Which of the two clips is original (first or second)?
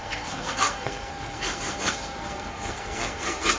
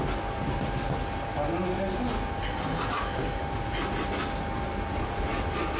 second